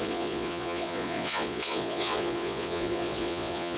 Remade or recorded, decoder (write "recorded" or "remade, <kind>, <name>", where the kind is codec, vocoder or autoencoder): remade, vocoder, Vocos